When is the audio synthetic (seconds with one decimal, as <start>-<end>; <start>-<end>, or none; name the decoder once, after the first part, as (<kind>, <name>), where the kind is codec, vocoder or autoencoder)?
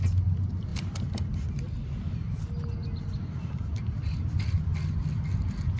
none